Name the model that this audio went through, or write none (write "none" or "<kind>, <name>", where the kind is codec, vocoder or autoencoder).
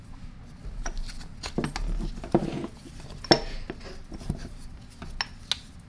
none